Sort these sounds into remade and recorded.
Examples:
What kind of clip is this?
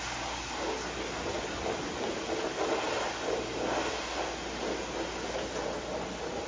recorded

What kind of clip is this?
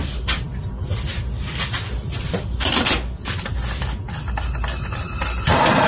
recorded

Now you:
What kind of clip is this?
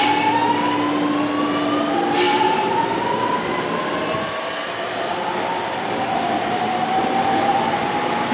recorded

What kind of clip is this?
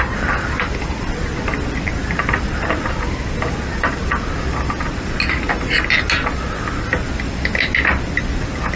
recorded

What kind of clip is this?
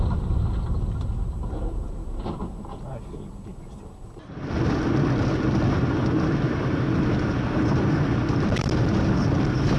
recorded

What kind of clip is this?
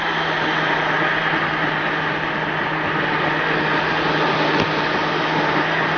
recorded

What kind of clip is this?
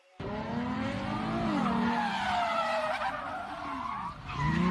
recorded